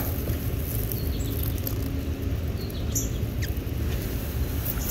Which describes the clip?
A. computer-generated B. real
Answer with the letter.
B